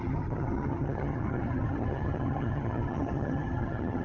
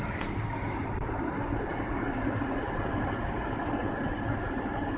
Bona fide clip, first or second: second